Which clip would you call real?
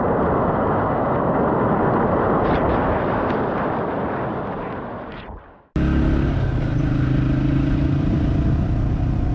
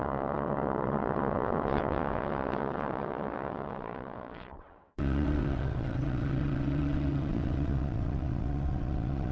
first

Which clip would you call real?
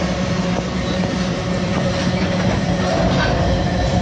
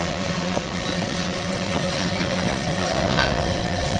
first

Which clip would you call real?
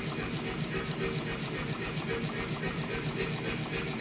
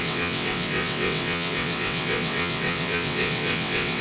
first